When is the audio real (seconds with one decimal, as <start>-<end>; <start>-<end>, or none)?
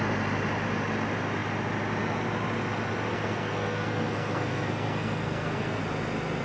0.0-3.1; 5.8-6.4